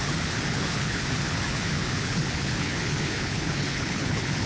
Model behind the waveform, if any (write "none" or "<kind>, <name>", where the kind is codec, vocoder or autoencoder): codec, HILCodec